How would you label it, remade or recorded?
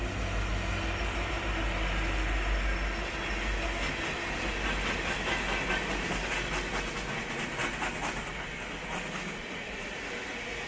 recorded